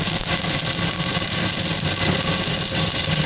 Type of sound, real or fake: real